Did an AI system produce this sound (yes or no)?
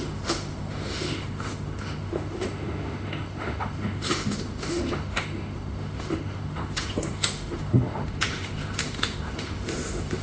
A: yes